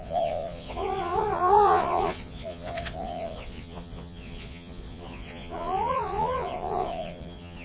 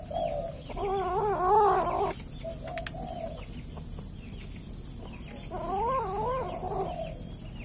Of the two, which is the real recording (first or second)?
second